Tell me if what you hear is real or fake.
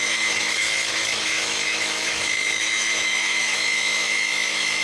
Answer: fake